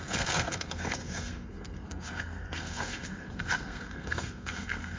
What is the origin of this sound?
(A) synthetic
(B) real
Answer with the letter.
A